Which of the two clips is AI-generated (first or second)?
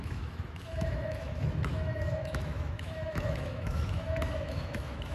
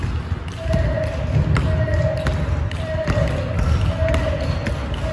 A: first